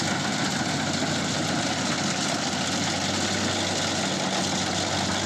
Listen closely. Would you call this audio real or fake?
real